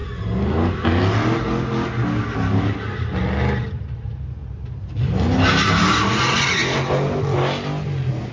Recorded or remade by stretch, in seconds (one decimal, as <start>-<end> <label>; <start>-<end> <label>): 0.0-8.3 recorded

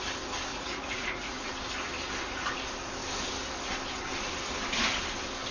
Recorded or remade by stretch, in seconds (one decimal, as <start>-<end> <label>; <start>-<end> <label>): 0.0-0.5 recorded; 0.5-1.5 remade; 1.5-5.5 recorded

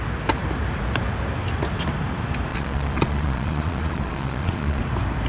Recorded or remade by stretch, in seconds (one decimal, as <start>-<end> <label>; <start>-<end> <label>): 0.0-2.5 recorded; 2.5-4.8 remade; 4.8-5.3 recorded

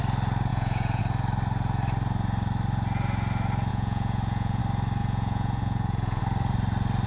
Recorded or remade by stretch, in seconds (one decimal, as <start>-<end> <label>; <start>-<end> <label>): 0.0-0.5 recorded; 0.5-1.0 remade; 1.0-3.7 recorded; 3.7-4.6 remade; 4.6-5.0 recorded; 5.0-6.2 remade; 6.2-7.1 recorded

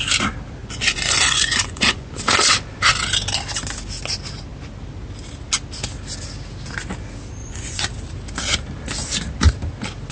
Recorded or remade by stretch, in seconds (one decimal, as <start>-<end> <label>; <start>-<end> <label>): 0.0-0.6 recorded; 0.6-2.1 remade; 2.1-7.4 recorded; 7.4-7.9 remade; 7.9-10.1 recorded